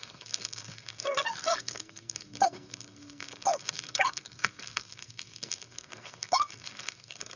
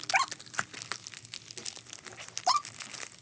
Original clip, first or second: second